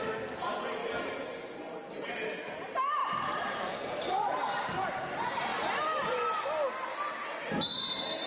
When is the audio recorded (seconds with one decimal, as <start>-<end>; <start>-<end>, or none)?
0.0-3.0; 4.5-8.3